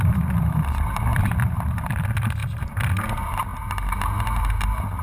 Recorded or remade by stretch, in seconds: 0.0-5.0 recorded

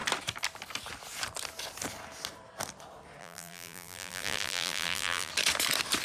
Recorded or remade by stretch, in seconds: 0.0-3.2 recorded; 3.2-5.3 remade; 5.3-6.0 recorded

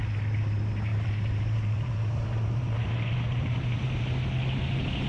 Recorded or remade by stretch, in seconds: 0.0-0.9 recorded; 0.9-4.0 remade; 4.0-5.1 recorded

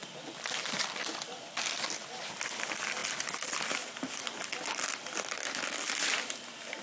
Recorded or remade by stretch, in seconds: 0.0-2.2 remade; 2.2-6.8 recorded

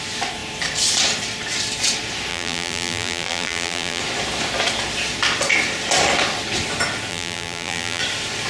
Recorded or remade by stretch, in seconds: 0.0-2.3 recorded; 2.3-4.0 remade; 4.0-7.1 recorded; 7.1-8.0 remade; 8.0-8.5 recorded